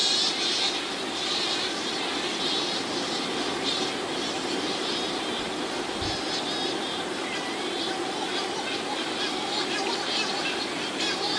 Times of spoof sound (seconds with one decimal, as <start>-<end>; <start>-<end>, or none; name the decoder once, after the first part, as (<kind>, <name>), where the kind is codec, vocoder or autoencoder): none

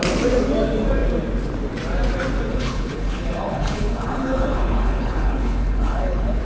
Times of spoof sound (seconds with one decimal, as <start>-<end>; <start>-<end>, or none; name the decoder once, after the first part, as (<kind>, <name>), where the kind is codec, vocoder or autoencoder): 2.5-6.4 (codec, HILCodec)

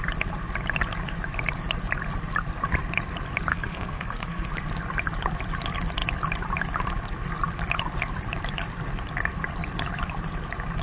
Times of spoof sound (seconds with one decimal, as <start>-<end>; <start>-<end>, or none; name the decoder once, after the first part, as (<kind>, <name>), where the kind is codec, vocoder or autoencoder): 3.5-4.5 (codec, SNAC)

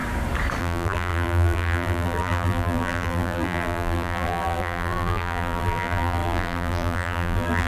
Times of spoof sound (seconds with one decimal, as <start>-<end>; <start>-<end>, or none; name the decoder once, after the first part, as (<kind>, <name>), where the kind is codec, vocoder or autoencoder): 0.6-7.7 (vocoder, BigVGAN v2)

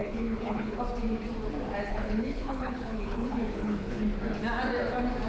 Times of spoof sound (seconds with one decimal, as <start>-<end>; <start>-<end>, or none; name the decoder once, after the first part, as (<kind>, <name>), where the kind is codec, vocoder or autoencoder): 0.0-0.8 (codec, HILCodec); 1.9-4.0

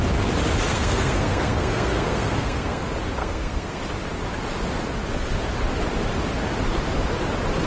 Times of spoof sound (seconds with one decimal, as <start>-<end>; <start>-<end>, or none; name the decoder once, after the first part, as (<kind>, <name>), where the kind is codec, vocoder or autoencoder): 0.7-2.8 (codec, SNAC); 3.2-3.8

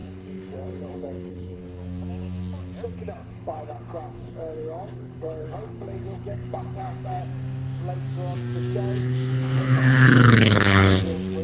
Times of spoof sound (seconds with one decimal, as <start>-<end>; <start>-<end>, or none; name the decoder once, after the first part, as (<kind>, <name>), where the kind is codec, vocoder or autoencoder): 0.0-1.6 (codec, HILCodec); 3.2-7.2; 9.0-11.0